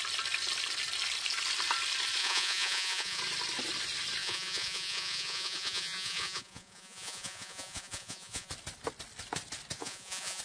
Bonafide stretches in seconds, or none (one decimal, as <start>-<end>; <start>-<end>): 0.0-2.2; 3.2-4.2; 8.5-9.8